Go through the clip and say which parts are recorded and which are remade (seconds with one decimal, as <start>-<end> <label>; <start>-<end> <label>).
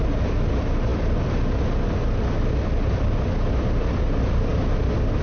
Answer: 0.0-5.2 recorded